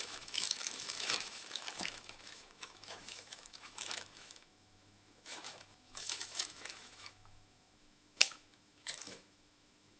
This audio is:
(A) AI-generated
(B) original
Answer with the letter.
A